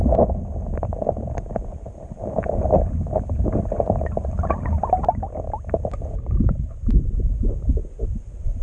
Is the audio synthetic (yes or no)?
no